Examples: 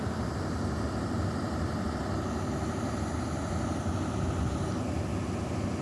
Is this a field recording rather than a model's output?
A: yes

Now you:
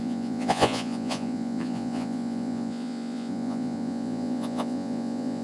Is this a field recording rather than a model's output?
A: no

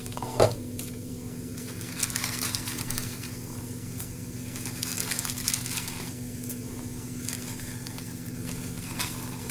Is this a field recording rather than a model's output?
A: no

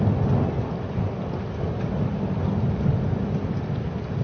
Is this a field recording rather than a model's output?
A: yes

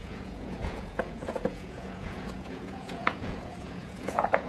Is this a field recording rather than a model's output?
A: no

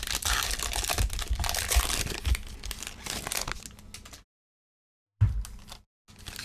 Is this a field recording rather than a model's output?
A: yes